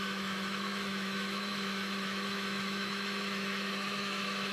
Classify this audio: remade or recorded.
remade